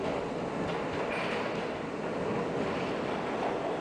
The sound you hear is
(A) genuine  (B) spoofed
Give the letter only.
A